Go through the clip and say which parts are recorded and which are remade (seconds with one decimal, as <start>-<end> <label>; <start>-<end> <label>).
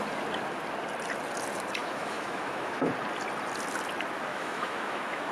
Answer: 0.0-1.8 recorded; 1.8-2.9 remade; 2.9-4.3 recorded; 4.3-5.3 remade